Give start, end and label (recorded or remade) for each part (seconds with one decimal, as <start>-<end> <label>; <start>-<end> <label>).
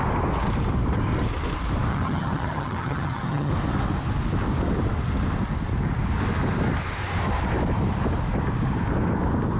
0.0-1.9 recorded; 1.9-3.5 remade; 3.5-9.6 recorded